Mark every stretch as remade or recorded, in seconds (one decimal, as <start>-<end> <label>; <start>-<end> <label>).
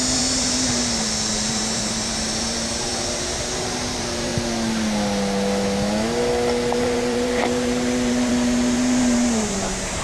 0.0-0.8 remade; 0.8-1.5 recorded; 1.5-4.3 remade; 4.3-6.8 recorded; 6.8-10.0 remade